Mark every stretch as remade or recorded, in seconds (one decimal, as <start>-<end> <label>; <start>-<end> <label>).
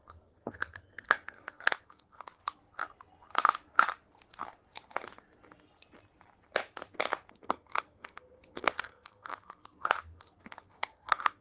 0.0-2.4 remade; 2.4-7.3 recorded; 7.3-11.4 remade